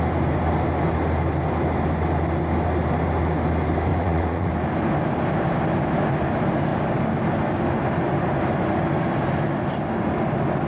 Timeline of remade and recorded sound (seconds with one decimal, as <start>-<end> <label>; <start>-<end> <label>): 0.0-3.9 recorded; 3.9-4.5 remade; 4.5-10.7 recorded